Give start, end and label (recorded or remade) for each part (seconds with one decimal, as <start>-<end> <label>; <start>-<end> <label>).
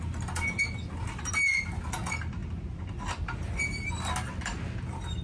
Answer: 0.0-5.2 recorded